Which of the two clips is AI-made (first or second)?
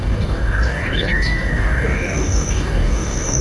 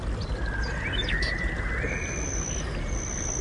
first